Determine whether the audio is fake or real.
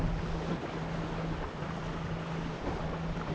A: real